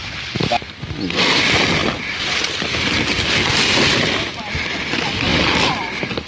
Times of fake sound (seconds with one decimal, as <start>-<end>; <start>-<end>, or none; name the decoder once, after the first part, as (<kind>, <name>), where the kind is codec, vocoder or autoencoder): none